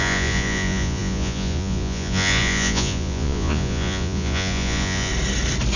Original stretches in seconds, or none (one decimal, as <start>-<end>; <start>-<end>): 5.1-5.8